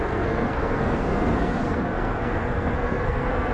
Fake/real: fake